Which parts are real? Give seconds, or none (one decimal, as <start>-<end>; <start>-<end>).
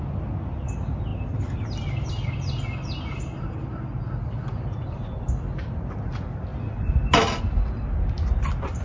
0.0-8.8